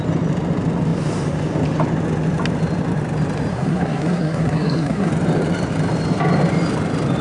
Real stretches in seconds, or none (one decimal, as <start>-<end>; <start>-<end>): 0.0-3.5; 5.1-7.2